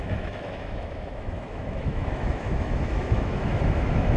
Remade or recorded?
remade